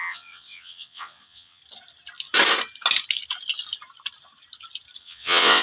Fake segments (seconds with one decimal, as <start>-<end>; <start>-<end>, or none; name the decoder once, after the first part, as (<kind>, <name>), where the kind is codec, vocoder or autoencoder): 0.0-1.6 (vocoder, WaveNeXt); 5.0-5.6